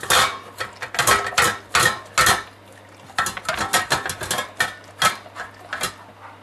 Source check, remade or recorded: recorded